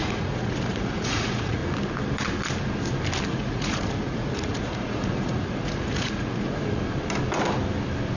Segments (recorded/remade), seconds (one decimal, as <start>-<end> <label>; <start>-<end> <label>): 0.0-1.6 remade; 1.6-3.3 recorded; 3.3-6.8 remade; 6.8-8.2 recorded